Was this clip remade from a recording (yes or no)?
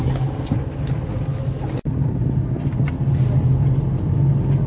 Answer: no